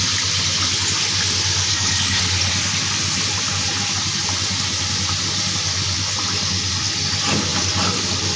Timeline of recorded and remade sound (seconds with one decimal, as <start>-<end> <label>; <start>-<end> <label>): 0.0-1.7 recorded; 1.7-2.2 remade; 2.2-8.4 recorded